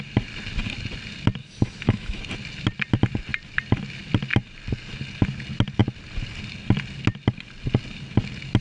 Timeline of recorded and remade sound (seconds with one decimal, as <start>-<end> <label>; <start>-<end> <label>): 0.0-1.4 recorded; 1.4-2.2 remade; 2.2-8.6 recorded